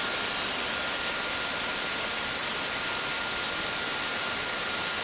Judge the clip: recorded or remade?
recorded